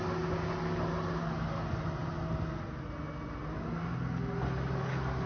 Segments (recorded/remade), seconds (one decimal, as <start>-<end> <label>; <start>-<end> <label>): 0.0-5.3 recorded